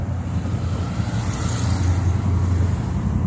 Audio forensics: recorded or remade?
recorded